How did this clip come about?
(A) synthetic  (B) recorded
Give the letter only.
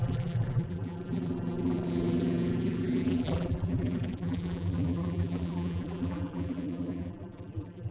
A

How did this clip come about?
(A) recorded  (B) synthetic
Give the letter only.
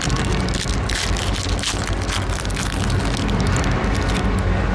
A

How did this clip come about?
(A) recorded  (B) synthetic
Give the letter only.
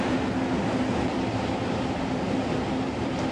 A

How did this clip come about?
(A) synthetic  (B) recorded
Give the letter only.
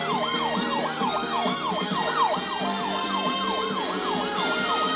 B